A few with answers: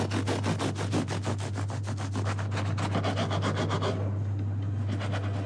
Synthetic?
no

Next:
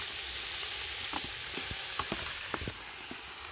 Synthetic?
no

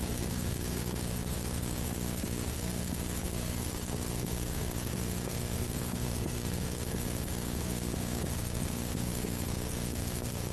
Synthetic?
yes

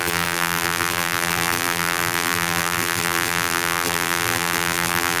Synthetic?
yes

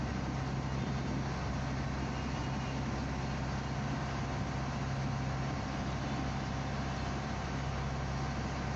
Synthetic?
no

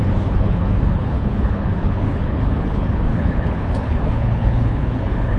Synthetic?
yes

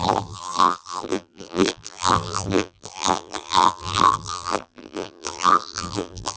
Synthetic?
yes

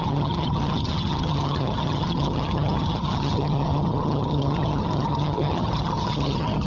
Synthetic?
yes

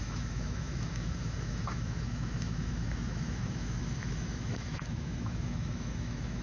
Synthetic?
yes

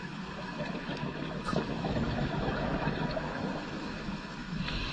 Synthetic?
yes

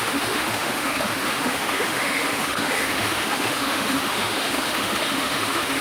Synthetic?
yes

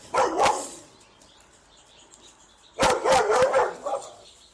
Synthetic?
no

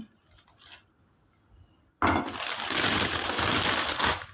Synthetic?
no